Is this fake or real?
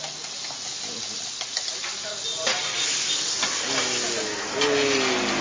real